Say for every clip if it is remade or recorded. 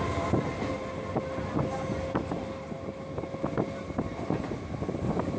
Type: recorded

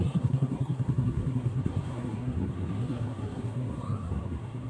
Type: remade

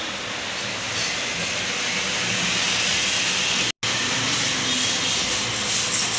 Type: recorded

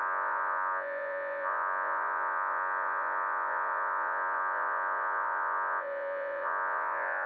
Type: remade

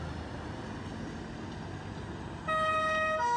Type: recorded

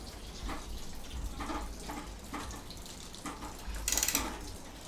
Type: recorded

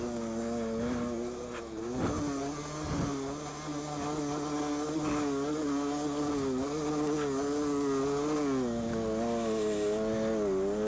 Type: recorded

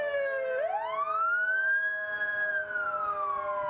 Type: recorded